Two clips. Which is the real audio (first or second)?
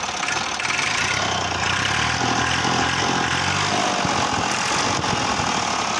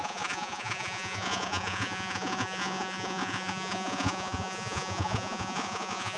first